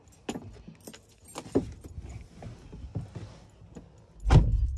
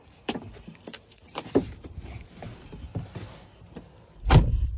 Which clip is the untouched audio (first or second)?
first